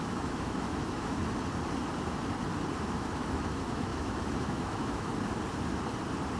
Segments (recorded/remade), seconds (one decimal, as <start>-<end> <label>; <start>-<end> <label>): 0.0-1.2 remade; 1.2-2.7 recorded; 2.7-5.1 remade; 5.1-6.4 recorded